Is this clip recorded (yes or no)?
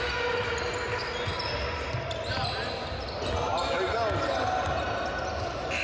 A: yes